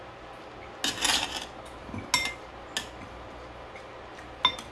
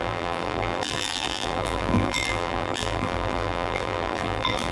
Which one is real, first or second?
first